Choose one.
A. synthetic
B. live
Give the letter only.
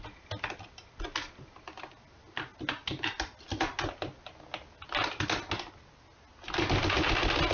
B